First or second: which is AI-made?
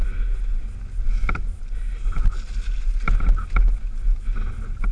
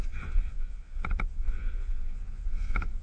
second